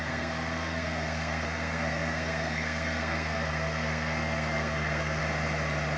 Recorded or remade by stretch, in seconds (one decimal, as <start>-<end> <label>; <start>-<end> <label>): 0.0-5.2 remade; 5.2-6.0 recorded